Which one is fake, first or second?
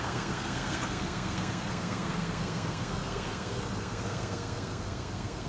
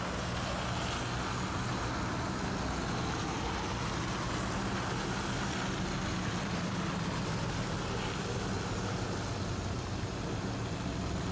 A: first